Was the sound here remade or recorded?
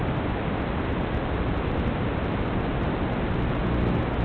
recorded